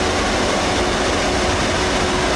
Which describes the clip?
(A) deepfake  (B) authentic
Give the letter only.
B